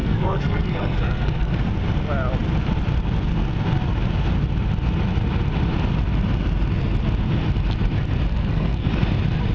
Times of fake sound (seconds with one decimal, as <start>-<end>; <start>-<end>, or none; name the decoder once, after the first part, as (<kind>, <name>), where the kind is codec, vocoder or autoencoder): 0.0-1.6 (codec, SNAC); 8.3-8.9